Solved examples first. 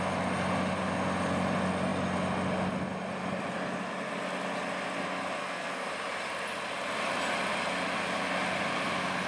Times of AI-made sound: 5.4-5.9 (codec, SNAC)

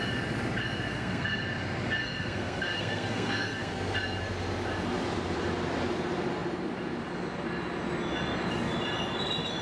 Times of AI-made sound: 0.9-1.4 (codec, SNAC); 2.0-3.7

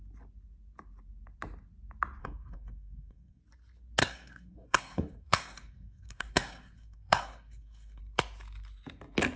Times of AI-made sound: 2.2-3.4 (codec, SNAC); 4.0-8.0

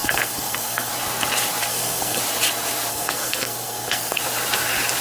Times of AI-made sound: 0.0-0.9 (codec, SNAC); 1.7-2.2; 2.9-4.2

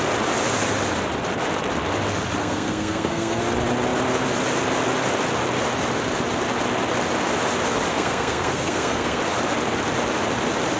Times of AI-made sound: 2.4-3.4 (codec, SNAC); 7.9-9.2

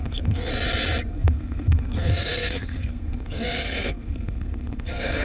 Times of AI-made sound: 0.0-0.5 (codec, SNAC); 1.1-5.2

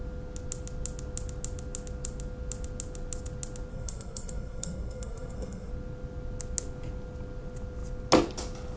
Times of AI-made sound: 3.7-5.7 (codec, SNAC)

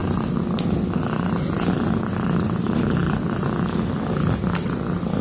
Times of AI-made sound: none